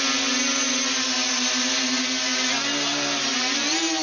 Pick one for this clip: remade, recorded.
recorded